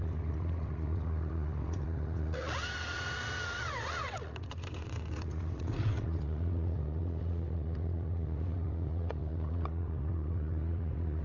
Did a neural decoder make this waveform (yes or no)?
yes